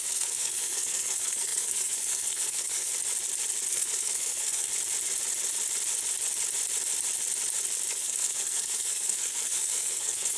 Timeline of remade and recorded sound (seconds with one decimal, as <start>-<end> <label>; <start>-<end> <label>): 0.0-2.9 remade; 2.9-3.7 recorded; 3.7-4.7 remade; 4.7-7.9 recorded; 7.9-10.4 remade